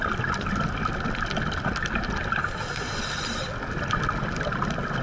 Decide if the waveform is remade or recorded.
recorded